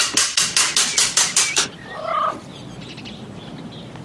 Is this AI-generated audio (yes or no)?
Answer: no